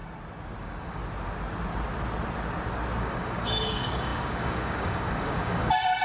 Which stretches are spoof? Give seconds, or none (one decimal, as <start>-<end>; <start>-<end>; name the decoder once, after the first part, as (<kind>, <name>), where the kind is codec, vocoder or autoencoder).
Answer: 0.6-1.0 (codec, DAC); 3.0-6.0